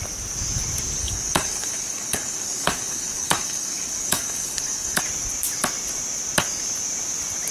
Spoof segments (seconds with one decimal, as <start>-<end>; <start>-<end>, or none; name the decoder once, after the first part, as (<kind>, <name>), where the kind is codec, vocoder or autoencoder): 1.0-5.0 (codec, DAC)